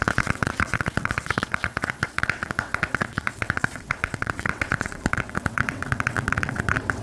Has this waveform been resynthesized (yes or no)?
yes